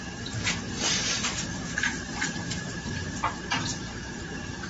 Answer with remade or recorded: remade